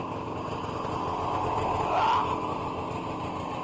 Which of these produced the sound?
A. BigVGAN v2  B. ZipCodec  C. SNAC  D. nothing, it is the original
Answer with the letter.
D